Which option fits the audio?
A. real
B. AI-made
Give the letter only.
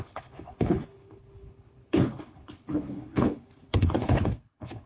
B